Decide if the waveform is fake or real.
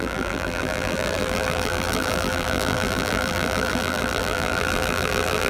fake